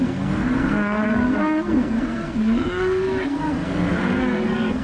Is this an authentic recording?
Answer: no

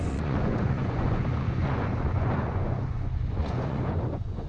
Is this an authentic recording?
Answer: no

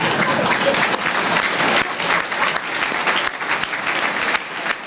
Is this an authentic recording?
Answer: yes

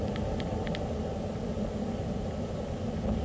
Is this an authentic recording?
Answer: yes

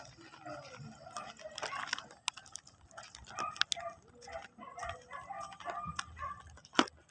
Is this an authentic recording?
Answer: yes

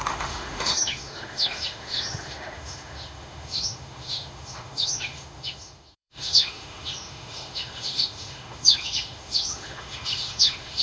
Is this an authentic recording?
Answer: no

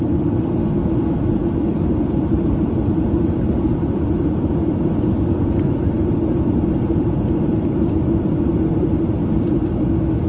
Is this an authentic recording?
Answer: no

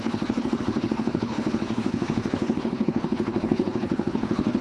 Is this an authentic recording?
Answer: no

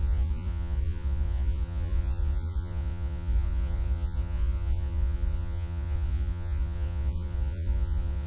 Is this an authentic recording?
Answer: no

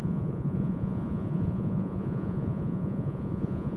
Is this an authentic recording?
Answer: no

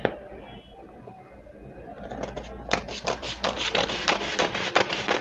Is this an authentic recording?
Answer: yes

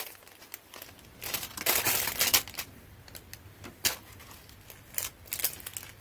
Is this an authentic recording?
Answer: yes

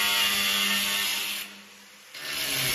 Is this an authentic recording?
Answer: yes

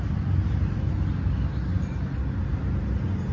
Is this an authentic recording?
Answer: yes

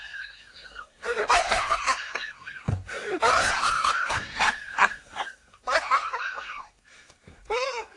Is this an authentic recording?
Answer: no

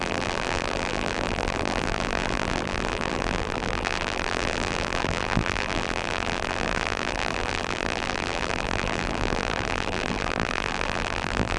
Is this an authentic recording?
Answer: no